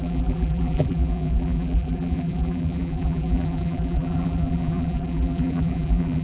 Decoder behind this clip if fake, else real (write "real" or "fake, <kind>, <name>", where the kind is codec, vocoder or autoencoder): fake, vocoder, BigVGAN v2